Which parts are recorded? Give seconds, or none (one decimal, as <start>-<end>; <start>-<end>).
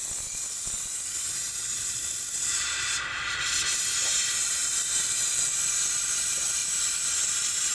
0.0-7.7